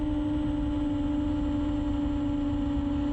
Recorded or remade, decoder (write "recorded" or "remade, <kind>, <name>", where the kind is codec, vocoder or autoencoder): recorded